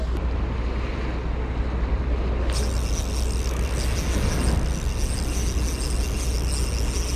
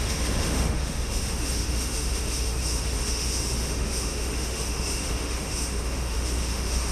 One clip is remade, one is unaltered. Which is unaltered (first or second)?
first